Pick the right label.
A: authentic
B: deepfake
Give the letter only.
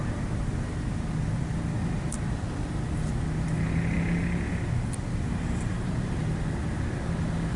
A